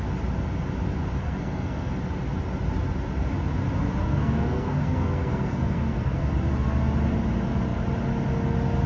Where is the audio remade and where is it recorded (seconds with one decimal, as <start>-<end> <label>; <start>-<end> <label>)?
0.0-1.2 recorded; 1.2-1.9 remade; 1.9-4.0 recorded; 4.0-6.2 remade; 6.2-8.9 recorded